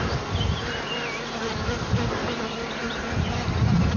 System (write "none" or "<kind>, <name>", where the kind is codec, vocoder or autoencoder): none